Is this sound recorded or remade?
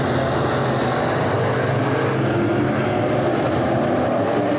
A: recorded